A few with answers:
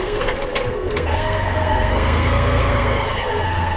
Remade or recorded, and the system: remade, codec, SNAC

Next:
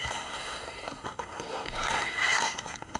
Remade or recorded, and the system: remade, codec, SNAC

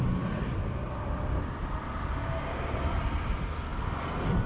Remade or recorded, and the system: recorded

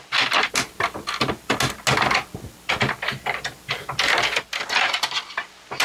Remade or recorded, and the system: recorded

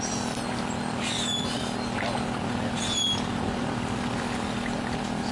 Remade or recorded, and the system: recorded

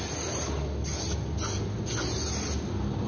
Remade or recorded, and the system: recorded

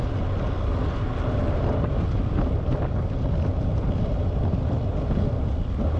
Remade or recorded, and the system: recorded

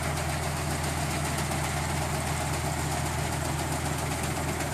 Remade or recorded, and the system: recorded